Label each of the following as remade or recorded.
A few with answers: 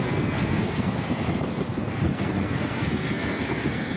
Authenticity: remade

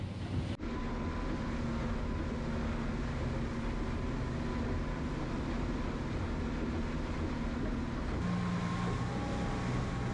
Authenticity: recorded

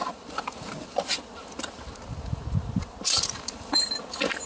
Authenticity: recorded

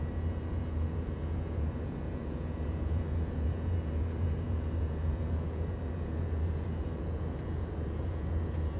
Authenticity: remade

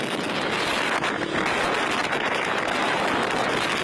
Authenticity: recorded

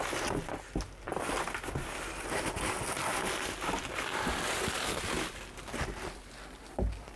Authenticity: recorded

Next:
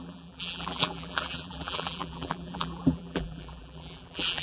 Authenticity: remade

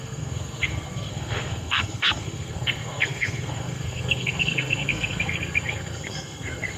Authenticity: remade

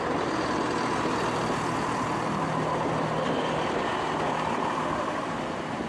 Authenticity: recorded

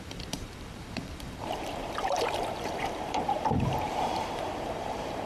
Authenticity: remade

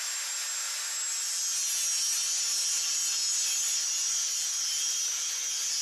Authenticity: recorded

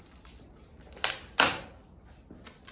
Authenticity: recorded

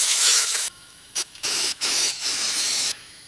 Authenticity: remade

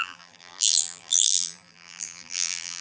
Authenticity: remade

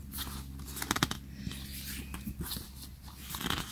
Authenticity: recorded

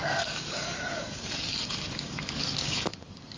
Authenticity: remade